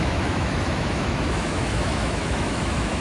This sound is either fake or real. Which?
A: fake